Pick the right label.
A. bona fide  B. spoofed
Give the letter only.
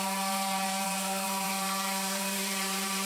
B